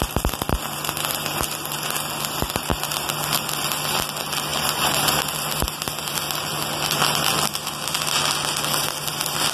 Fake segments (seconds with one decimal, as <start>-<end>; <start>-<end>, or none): 2.7-3.5; 4.5-5.2